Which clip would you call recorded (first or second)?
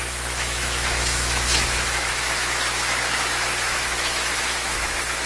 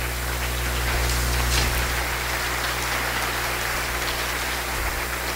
second